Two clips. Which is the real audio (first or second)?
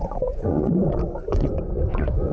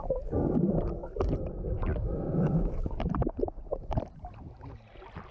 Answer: second